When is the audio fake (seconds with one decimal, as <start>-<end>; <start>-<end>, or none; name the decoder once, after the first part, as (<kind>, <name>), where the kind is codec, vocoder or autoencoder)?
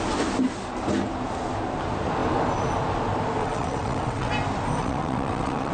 3.4-4.3 (vocoder, WaveNeXt); 4.8-5.7